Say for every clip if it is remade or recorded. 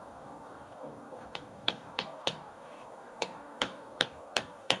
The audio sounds remade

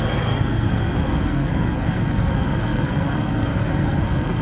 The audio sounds remade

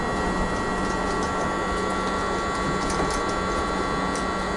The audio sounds recorded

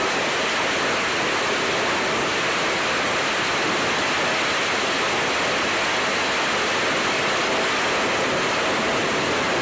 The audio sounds recorded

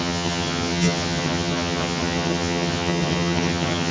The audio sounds remade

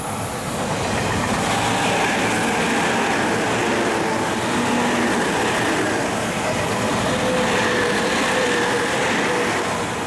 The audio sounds recorded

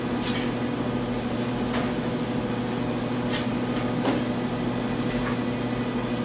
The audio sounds recorded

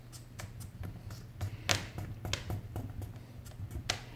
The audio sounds recorded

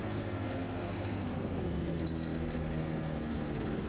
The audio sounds remade